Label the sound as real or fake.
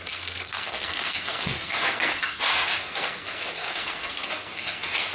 fake